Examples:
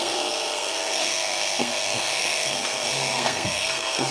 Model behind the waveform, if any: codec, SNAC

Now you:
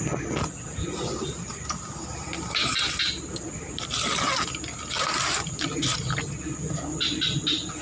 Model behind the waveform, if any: none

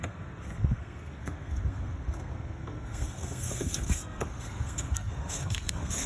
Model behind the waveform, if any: codec, SNAC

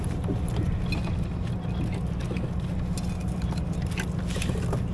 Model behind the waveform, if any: none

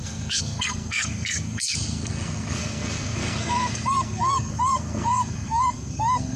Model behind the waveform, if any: codec, SNAC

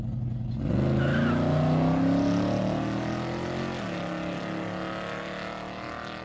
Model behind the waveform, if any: none